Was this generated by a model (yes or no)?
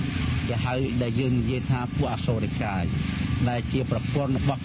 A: no